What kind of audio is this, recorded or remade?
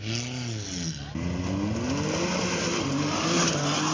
recorded